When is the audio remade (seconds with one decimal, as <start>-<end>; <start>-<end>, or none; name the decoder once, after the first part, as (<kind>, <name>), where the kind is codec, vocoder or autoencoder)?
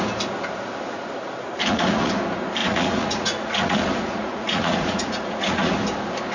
1.6-2.1 (vocoder, Vocos); 2.6-5.7